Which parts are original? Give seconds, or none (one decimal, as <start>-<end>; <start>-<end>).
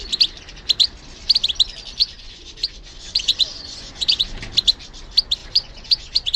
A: 0.0-2.0; 4.4-5.4